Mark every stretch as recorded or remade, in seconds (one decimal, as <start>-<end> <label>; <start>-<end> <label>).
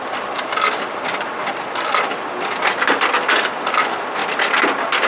0.0-5.1 recorded